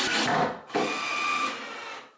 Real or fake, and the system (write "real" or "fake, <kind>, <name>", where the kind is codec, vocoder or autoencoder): real